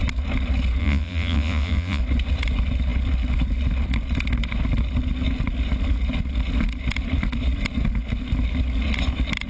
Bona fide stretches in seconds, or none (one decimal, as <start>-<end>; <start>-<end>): 0.0-0.8; 2.0-9.5

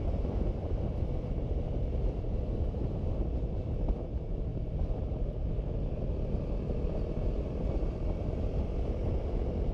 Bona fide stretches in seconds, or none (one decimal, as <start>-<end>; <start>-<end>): 0.0-9.7

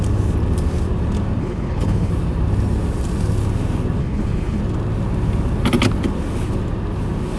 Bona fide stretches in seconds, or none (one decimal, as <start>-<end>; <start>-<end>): 0.0-1.4; 2.1-4.0; 4.6-7.4

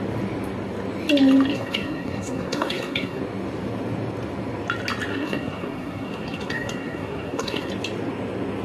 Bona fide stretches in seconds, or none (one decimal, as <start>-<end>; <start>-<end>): 0.0-1.5; 3.2-5.1; 7.7-8.6

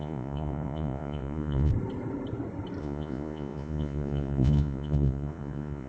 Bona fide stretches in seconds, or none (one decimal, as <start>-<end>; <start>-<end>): 1.7-2.8

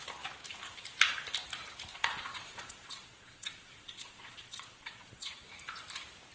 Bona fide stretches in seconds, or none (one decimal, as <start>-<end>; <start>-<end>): 0.0-1.9; 5.5-6.3

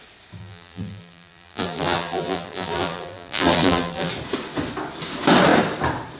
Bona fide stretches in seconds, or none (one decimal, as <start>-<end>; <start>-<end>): 0.0-0.4; 4.1-6.2